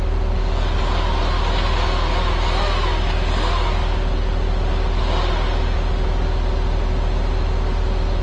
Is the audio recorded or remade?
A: recorded